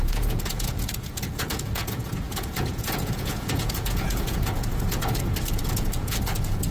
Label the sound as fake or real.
fake